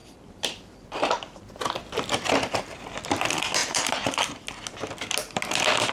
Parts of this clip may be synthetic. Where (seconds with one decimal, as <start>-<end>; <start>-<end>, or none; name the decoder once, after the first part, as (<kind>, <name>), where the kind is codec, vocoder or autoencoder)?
0.0-1.6 (vocoder, BigVGAN v2); 3.6-4.3